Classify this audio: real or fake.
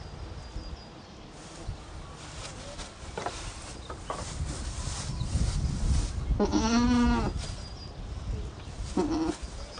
real